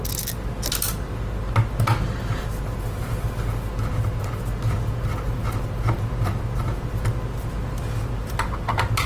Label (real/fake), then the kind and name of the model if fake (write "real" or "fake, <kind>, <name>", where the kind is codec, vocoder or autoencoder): real